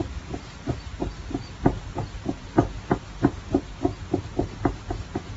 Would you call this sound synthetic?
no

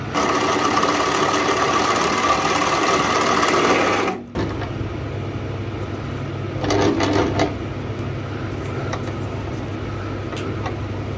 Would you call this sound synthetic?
no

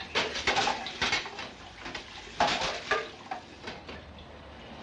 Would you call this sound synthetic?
no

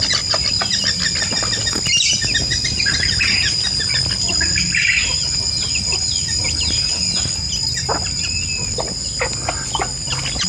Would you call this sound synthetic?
no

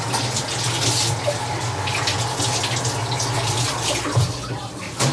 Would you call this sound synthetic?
no